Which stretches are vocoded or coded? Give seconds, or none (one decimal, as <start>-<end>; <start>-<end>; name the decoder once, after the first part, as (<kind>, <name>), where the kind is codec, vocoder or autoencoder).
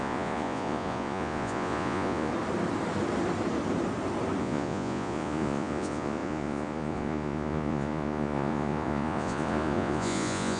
0.0-2.3 (vocoder, Vocos); 4.4-10.6